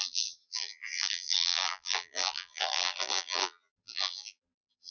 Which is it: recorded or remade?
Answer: remade